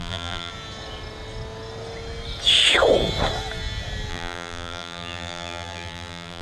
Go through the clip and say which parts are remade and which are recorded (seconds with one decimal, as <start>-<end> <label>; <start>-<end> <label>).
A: 0.0-0.5 remade; 0.5-4.1 recorded; 4.1-6.4 remade